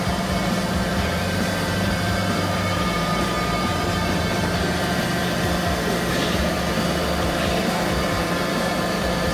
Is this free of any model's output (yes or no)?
no